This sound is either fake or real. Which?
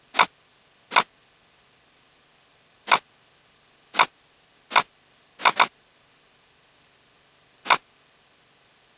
real